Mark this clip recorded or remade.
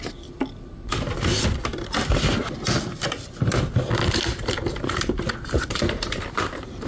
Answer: remade